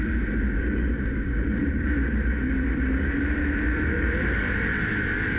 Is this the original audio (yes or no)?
no